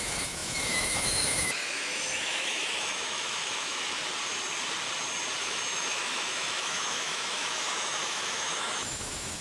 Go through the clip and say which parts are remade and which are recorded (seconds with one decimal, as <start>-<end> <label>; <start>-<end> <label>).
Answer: 0.0-4.0 remade; 4.0-5.4 recorded; 5.4-9.4 remade